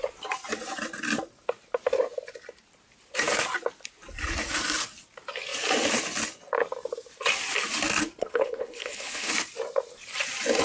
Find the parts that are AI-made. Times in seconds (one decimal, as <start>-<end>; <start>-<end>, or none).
8.2-9.3